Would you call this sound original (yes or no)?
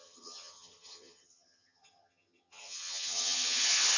no